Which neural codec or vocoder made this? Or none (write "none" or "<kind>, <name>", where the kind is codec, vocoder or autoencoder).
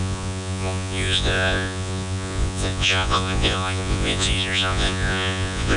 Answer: vocoder, Vocos